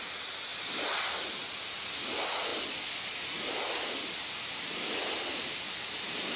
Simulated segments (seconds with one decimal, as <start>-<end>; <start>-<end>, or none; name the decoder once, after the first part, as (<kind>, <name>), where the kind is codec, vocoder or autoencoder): none